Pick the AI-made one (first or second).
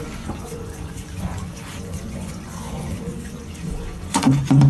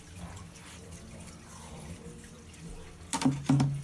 first